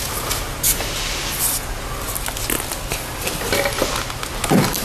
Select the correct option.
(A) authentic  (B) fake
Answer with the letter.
A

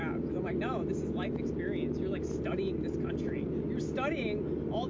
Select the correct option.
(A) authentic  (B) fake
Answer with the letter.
A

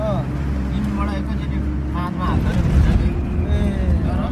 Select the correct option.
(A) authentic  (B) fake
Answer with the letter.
A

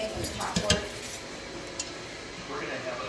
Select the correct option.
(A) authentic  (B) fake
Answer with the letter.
A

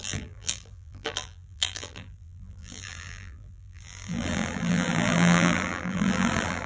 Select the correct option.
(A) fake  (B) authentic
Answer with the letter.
A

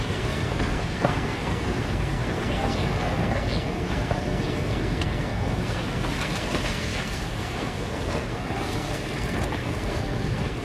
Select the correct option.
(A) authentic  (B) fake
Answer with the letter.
B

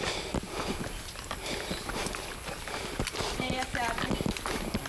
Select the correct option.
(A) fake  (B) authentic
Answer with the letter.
B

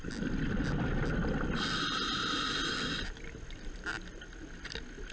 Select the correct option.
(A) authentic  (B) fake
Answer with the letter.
A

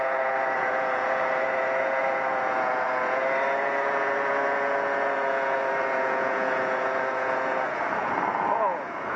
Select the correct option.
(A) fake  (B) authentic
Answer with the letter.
A